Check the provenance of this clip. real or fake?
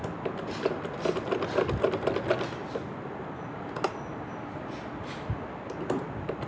real